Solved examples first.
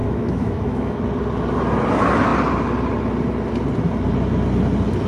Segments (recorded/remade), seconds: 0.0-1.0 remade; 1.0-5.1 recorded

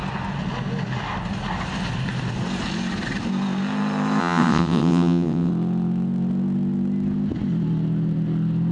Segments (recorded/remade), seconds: 0.0-4.2 recorded; 4.2-5.5 remade; 5.5-8.7 recorded

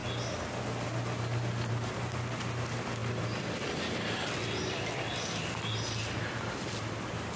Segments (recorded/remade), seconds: 0.0-3.0 recorded; 3.0-6.2 remade; 6.2-7.4 recorded

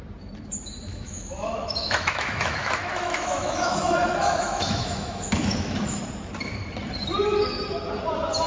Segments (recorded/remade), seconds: 0.0-0.9 recorded; 0.9-6.0 remade; 6.0-8.5 recorded